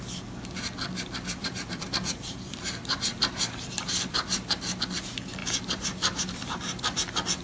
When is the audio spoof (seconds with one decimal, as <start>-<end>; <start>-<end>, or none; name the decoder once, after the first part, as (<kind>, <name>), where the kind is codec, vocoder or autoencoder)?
1.4-4.8 (vocoder, BigVGAN v2); 5.4-6.6